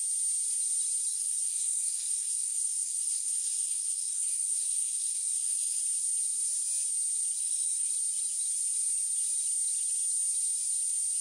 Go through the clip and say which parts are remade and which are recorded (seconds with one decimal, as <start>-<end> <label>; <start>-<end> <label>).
0.0-1.1 recorded; 1.1-5.8 remade; 5.8-7.4 recorded; 7.4-7.9 remade; 7.9-11.2 recorded